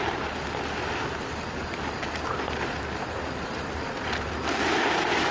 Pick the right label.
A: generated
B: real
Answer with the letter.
B